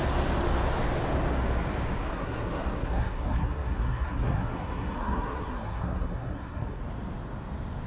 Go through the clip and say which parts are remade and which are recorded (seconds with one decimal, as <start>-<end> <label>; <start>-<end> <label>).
0.0-2.1 recorded; 2.1-6.8 remade; 6.8-7.9 recorded

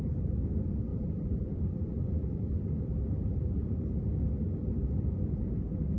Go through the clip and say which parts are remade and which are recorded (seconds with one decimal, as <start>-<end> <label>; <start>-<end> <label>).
0.0-0.9 recorded; 0.9-4.0 remade; 4.0-6.0 recorded

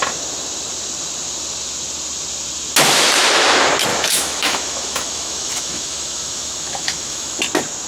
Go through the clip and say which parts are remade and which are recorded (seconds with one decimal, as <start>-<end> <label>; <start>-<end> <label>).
0.0-3.9 recorded; 3.9-7.4 remade; 7.4-7.9 recorded

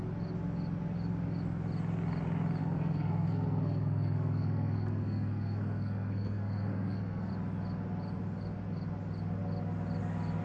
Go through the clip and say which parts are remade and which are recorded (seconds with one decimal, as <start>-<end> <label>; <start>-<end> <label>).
0.0-2.6 recorded; 2.6-7.3 remade; 7.3-10.4 recorded